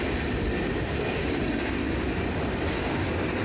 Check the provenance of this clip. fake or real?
real